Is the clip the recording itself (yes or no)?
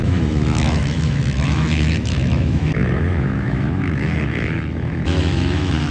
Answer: no